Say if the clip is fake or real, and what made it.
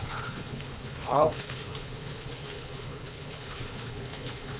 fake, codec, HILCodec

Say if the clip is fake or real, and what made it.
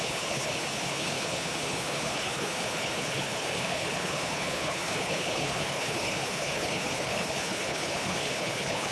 fake, codec, HILCodec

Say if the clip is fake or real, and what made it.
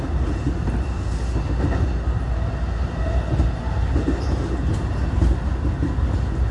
real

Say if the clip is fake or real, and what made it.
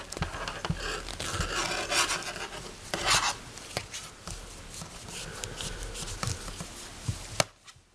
real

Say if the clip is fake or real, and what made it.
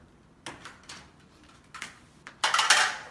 real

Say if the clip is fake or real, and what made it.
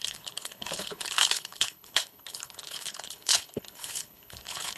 fake, codec, HILCodec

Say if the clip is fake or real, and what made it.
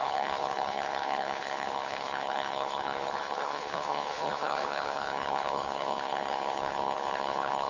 fake, codec, HILCodec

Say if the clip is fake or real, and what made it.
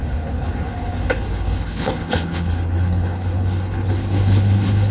fake, codec, HILCodec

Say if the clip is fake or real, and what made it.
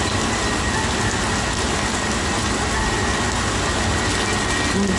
real